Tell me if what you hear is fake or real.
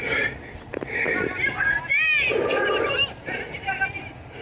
real